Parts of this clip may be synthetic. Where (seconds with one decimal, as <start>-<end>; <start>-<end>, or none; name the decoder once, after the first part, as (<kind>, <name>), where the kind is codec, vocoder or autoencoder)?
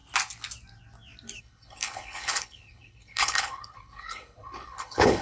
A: 1.4-5.2 (codec, HILCodec)